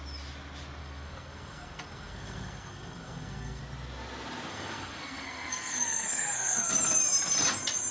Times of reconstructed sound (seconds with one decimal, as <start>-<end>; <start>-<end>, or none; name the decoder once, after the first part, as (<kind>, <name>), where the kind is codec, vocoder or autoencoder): 0.8-3.6 (codec, SNAC); 4.5-6.7